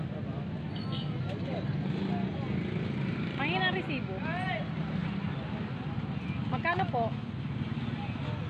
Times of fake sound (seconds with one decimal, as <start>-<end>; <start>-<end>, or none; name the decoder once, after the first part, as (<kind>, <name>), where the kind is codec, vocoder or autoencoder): none